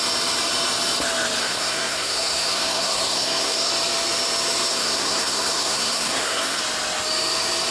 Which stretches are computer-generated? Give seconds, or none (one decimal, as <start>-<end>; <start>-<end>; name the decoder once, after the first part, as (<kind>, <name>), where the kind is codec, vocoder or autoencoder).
1.4-3.7 (codec, SNAC); 4.7-6.6